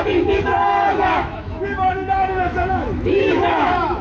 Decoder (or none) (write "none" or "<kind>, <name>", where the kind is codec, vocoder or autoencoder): autoencoder, DAC-VAE